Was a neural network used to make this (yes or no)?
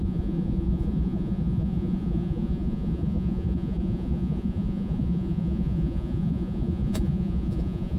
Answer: yes